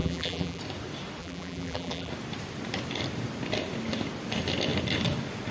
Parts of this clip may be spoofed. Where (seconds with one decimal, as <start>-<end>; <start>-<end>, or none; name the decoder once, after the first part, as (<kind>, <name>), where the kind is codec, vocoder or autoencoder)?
0.0-0.6 (vocoder, BigVGAN v2); 1.2-2.1